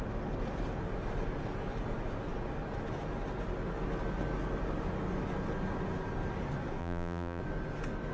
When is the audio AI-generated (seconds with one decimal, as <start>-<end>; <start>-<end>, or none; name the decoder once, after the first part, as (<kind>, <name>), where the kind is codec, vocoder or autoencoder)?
6.8-7.4 (vocoder, BigVGAN v2)